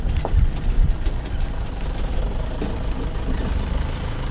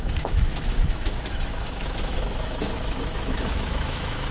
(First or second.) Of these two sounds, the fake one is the second